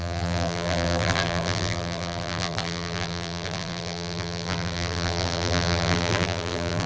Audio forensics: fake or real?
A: fake